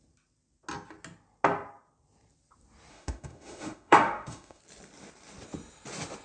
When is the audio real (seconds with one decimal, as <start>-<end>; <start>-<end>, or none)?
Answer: 0.0-2.9; 4.6-6.2